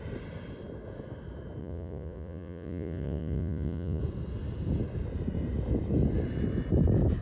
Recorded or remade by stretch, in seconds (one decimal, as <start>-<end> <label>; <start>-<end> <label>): 0.0-1.6 recorded; 1.6-4.0 remade; 4.0-7.2 recorded